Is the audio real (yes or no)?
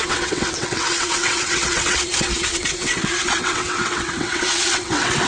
no